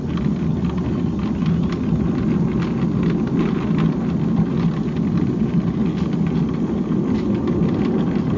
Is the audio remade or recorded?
recorded